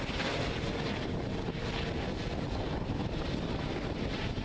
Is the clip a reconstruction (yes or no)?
no